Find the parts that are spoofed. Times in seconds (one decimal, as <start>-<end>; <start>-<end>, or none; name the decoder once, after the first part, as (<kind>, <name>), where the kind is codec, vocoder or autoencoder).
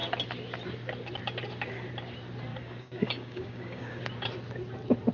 2.5-4.0 (codec, DAC)